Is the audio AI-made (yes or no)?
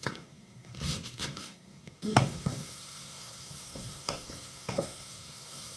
yes